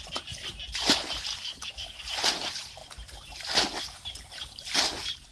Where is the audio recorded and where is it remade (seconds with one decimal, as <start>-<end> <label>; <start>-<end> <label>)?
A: 0.0-1.3 recorded; 1.3-2.0 remade; 2.0-5.3 recorded